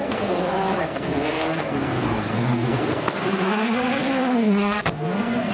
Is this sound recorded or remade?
remade